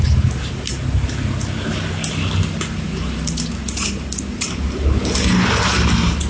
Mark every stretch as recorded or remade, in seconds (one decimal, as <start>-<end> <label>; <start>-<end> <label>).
0.0-6.3 recorded